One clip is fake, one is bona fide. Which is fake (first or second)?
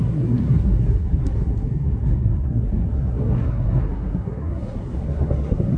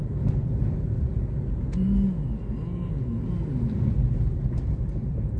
first